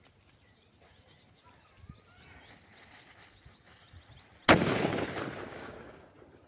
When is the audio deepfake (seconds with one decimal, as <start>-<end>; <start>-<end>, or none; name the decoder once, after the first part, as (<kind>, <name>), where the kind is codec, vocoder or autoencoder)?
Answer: 5.5-6.0 (codec, DAC)